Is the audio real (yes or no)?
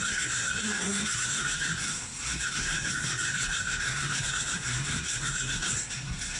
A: no